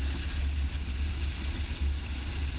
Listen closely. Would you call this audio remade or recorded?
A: recorded